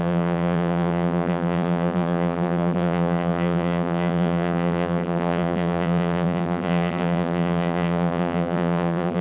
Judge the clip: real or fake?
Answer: fake